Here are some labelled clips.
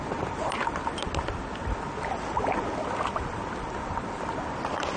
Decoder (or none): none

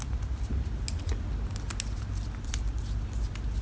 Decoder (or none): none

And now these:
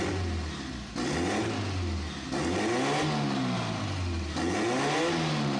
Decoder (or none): none